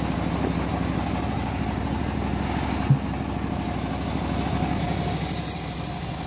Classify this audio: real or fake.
real